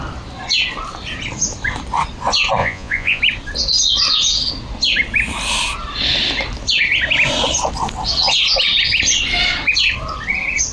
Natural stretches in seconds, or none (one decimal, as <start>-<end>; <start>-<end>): 0.0-2.6; 3.2-10.7